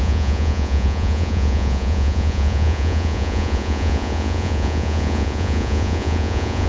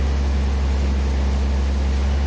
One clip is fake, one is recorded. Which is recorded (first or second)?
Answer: second